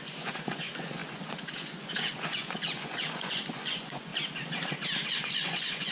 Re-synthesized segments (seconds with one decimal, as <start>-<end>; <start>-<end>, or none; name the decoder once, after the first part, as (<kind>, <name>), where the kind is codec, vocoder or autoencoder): 0.0-4.1 (vocoder, Vocos); 5.1-5.9